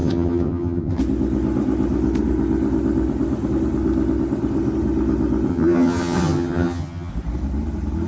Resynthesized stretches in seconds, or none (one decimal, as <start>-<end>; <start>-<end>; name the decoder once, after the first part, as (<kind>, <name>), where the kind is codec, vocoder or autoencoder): 0.0-1.0 (vocoder, HiFi-GAN); 5.5-7.1